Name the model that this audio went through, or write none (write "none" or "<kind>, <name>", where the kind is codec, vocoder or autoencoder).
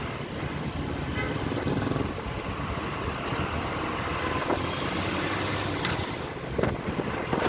none